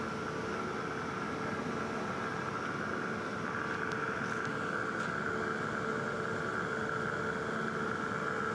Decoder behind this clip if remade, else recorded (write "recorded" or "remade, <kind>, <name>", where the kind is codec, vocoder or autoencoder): recorded